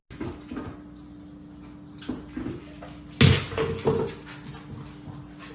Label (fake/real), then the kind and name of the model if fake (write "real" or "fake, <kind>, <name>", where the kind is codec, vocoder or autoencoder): real